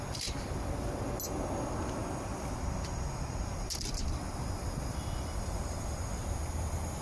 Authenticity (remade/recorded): recorded